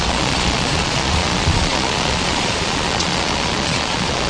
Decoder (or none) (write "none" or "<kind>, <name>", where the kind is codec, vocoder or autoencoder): vocoder, Vocos